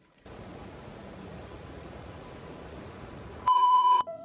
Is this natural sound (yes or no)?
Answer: no